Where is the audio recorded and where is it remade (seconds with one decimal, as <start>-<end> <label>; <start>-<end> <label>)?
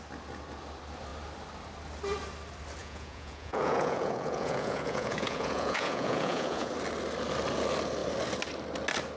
0.0-2.8 recorded; 2.8-6.7 remade; 6.7-9.2 recorded